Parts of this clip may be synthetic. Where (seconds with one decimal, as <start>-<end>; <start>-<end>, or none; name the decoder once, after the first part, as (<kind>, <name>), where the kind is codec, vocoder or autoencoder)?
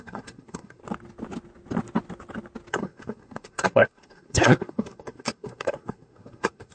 0.0-0.8 (codec, SNAC); 2.7-6.7